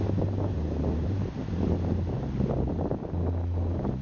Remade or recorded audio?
recorded